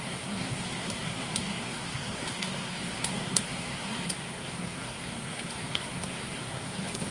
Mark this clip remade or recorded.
remade